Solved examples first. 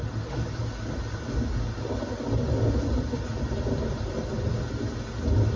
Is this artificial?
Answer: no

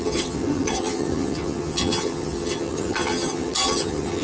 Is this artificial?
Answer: yes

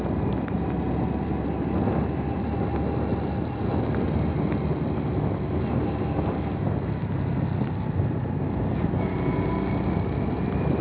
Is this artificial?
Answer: no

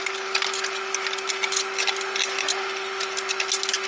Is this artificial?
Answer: no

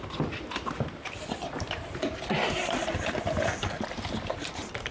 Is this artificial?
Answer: no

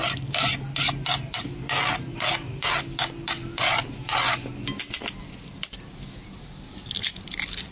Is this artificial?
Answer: no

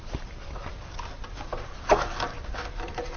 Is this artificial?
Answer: no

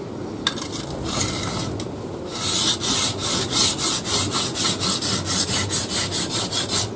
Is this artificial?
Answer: no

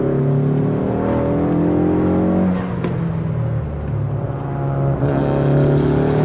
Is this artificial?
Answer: no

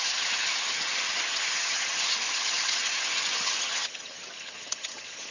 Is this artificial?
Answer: yes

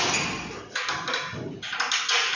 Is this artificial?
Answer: no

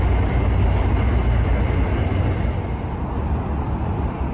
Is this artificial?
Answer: no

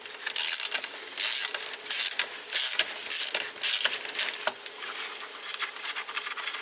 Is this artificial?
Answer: no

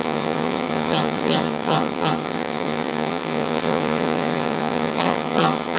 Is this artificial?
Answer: yes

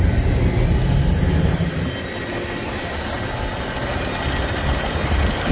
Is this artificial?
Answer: no